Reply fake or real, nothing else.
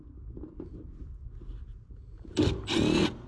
real